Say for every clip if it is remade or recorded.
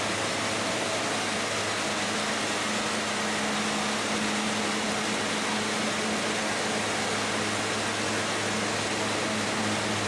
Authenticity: recorded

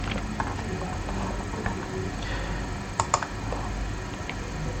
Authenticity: remade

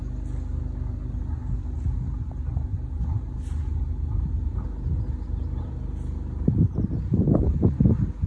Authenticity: recorded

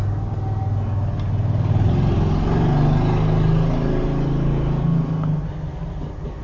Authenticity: recorded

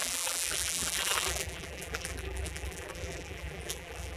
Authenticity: remade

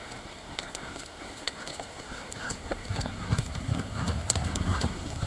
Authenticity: remade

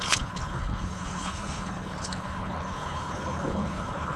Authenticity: remade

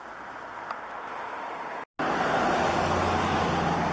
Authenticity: recorded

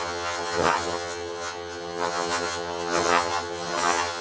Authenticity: remade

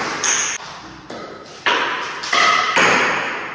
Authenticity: recorded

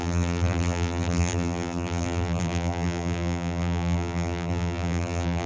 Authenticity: remade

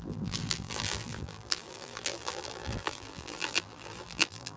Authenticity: remade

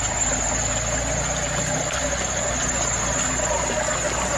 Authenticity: recorded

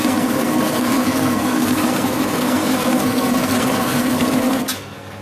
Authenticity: remade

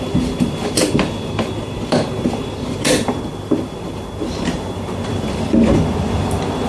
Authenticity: remade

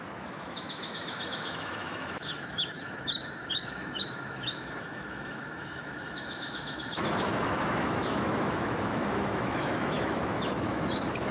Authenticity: remade